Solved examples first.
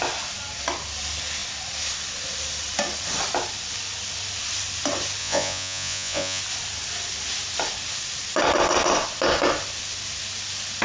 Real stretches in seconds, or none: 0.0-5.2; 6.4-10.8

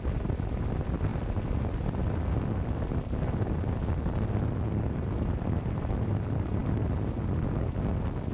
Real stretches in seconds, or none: 0.0-8.3

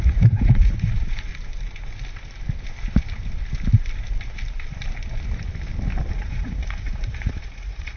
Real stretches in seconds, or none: 1.3-6.1

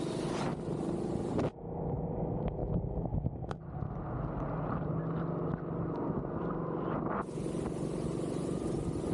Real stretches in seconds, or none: 0.0-9.1

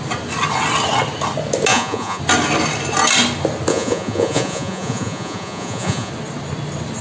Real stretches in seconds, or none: 0.0-1.7; 2.2-3.7; 6.1-7.0

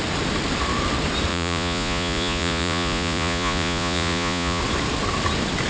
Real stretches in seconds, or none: 0.0-1.3; 4.6-5.7

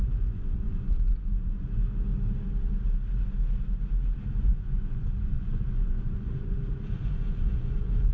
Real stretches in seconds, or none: 2.1-4.3

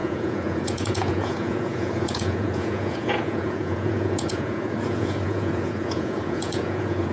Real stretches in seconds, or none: none